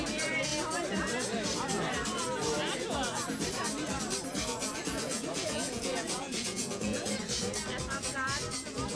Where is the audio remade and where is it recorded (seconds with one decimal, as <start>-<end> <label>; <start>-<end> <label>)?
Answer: 0.0-4.6 recorded; 4.6-7.1 remade; 7.1-9.0 recorded